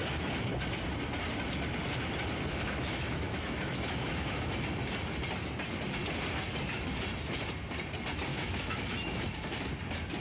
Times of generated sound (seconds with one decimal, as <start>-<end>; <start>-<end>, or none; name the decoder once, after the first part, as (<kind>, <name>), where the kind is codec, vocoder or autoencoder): 2.5-4.5 (autoencoder, DAC-VAE); 8.3-9.2